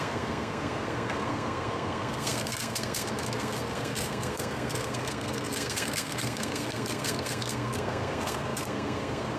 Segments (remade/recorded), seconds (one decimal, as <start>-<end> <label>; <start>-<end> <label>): 0.0-9.4 remade